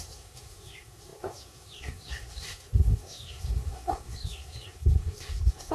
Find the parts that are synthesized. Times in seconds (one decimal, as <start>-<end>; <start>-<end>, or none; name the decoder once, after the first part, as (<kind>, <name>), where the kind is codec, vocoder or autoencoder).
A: 0.0-5.7 (codec, SNAC)